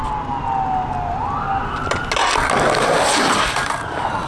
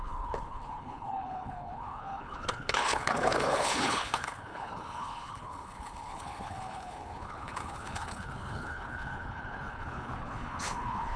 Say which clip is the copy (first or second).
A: second